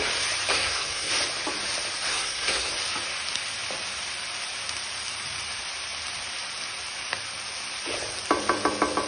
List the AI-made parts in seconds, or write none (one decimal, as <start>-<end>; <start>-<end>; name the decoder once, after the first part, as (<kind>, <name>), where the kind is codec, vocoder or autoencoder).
0.5-1.1 (codec, SNAC); 2.1-2.7

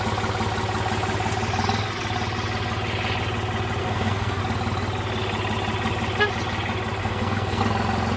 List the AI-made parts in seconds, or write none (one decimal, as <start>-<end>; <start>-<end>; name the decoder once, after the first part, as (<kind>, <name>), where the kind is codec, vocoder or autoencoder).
3.8-4.4 (codec, SNAC); 7.0-7.6